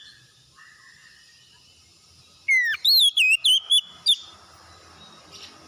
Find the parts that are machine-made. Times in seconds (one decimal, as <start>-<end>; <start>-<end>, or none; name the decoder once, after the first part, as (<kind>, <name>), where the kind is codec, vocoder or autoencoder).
none